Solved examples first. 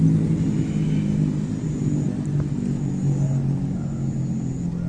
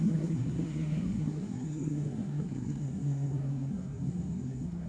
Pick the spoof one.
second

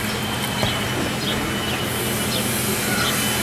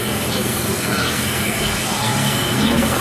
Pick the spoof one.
second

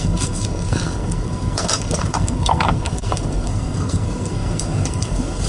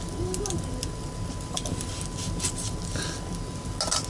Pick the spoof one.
first